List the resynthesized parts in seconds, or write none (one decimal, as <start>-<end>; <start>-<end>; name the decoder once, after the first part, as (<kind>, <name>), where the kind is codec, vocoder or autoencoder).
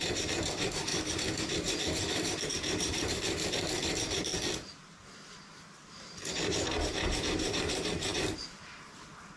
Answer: 0.0-4.3 (vocoder, BigVGAN v2); 5.9-9.4